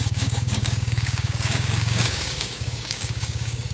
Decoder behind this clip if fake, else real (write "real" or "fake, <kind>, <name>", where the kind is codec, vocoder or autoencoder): fake, codec, DAC